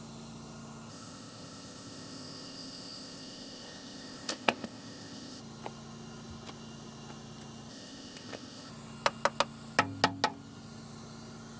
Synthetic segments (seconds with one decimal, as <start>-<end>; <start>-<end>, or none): 0.9-5.4; 7.7-8.7